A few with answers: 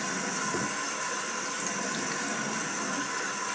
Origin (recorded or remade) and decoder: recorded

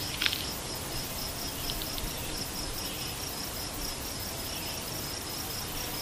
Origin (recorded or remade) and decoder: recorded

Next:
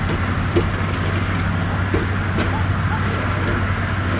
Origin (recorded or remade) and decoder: recorded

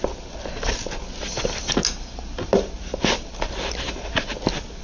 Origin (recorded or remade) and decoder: recorded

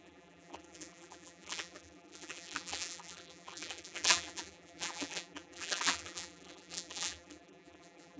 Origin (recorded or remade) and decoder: remade, vocoder, BigVGAN v2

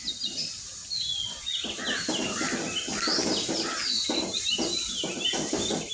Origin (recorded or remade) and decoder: recorded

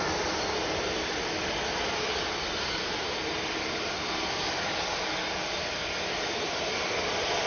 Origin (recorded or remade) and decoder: recorded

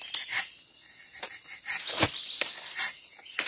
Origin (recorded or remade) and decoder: remade, vocoder, BigVGAN v2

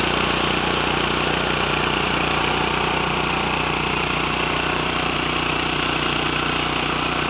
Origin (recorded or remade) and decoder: remade, vocoder, BigVGAN v2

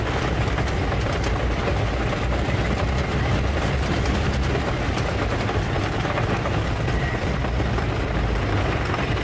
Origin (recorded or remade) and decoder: recorded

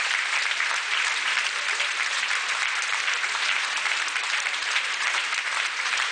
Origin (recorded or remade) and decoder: remade, vocoder, BigVGAN v2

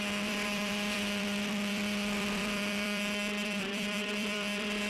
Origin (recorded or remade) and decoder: remade, vocoder, BigVGAN v2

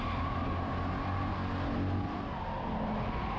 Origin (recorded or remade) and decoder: recorded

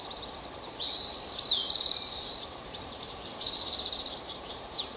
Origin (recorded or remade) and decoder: remade, vocoder, BigVGAN v2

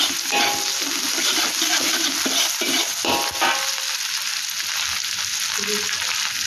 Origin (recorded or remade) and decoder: recorded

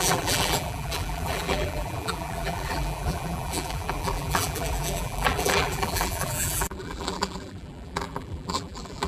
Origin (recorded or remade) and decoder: remade, vocoder, BigVGAN v2